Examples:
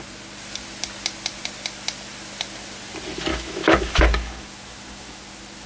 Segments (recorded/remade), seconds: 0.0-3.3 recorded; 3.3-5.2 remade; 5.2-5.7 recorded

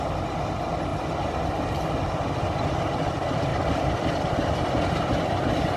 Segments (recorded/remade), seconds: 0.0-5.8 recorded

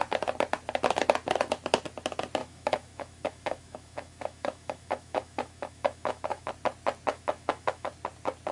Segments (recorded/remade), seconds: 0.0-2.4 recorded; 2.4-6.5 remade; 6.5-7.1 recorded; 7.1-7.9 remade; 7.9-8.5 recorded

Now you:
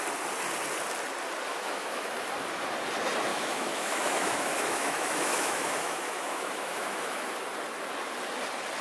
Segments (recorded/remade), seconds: 0.0-1.5 recorded; 1.5-2.1 remade; 2.1-3.3 recorded; 3.3-7.3 remade; 7.3-8.8 recorded